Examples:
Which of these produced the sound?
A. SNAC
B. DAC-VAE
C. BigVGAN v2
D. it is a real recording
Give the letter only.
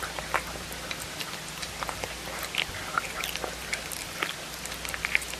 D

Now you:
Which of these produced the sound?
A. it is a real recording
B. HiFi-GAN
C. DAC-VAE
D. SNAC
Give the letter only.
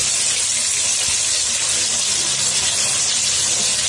A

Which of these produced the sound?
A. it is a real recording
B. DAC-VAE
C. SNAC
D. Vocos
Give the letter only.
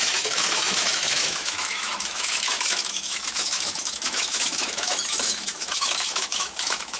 B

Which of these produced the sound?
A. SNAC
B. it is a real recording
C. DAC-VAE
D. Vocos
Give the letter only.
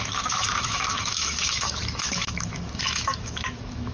C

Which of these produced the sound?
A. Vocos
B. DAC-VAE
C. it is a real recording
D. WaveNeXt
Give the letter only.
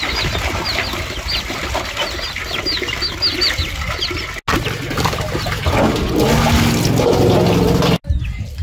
C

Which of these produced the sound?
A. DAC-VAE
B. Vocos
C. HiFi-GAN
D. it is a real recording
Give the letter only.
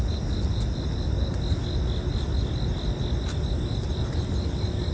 D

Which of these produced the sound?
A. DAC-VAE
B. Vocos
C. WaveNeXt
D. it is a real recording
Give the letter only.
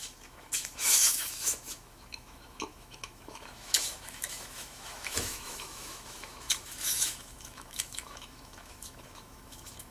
A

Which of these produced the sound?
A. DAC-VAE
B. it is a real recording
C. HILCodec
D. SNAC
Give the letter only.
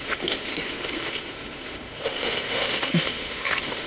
A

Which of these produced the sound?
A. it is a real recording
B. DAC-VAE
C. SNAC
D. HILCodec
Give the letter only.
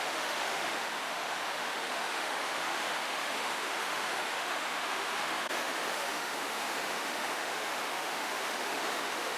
B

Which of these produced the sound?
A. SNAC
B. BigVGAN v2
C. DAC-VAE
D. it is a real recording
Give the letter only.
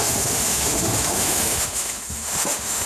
C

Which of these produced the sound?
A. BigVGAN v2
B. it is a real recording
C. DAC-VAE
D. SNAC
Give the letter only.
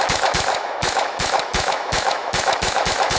C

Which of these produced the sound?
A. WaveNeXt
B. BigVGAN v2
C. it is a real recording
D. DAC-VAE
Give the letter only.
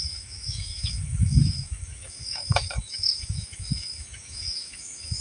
D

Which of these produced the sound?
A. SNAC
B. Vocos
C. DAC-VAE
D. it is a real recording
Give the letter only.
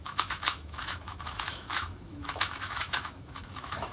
C